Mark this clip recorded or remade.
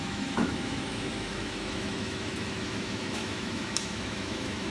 remade